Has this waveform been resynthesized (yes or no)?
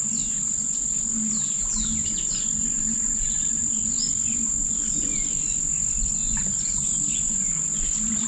no